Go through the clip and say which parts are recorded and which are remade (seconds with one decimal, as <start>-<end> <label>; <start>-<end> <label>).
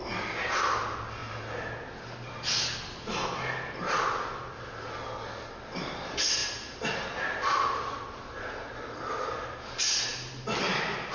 0.0-11.1 recorded